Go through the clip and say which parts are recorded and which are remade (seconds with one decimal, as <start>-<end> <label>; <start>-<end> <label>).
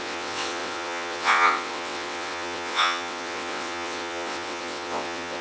0.0-5.4 remade